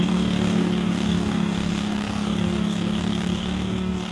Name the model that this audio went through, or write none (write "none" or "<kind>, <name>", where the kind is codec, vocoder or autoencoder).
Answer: codec, DAC